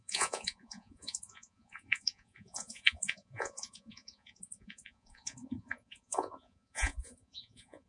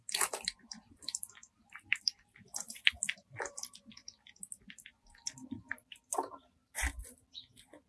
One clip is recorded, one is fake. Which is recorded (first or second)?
second